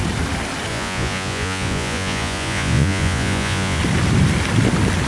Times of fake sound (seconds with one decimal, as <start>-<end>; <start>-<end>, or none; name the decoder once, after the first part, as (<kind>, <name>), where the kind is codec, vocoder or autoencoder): 0.7-3.8 (vocoder, Vocos)